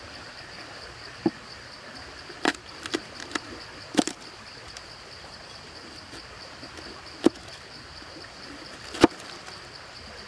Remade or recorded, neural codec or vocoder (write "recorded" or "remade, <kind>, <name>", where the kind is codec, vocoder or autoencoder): remade, vocoder, BigVGAN v2